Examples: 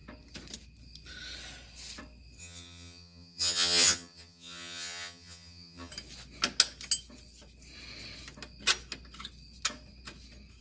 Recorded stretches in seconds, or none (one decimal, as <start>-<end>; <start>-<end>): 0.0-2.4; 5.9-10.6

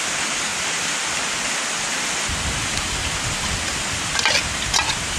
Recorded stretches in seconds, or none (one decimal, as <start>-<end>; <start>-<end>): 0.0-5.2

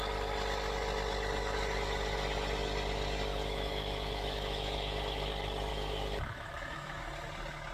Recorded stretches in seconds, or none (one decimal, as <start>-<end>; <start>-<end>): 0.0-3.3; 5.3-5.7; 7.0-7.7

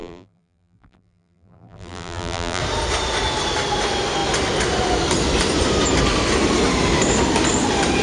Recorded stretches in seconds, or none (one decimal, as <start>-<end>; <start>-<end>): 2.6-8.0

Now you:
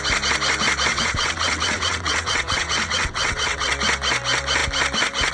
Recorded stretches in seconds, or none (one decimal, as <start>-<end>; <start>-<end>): 0.0-0.9; 3.7-5.3